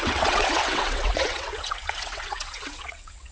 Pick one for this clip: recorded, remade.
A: remade